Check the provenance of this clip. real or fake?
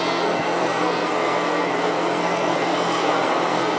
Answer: fake